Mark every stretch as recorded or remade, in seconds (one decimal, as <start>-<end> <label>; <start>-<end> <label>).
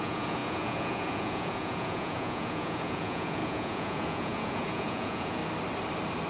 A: 0.0-5.4 remade; 5.4-6.3 recorded